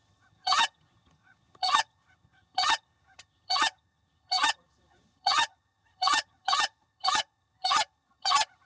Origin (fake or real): fake